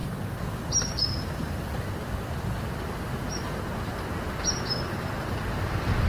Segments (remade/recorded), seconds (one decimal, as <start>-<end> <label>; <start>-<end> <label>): 0.0-3.6 remade; 3.6-6.1 recorded